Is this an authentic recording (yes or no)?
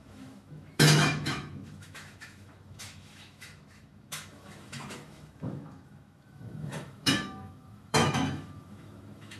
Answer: no